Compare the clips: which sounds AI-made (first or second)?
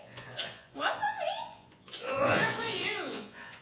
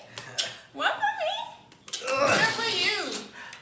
first